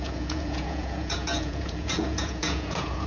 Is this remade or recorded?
remade